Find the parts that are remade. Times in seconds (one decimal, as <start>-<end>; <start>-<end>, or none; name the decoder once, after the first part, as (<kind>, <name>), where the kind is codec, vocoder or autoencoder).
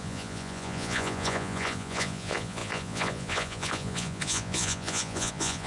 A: 0.0-5.7 (vocoder, Vocos)